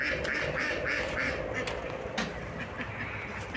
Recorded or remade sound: recorded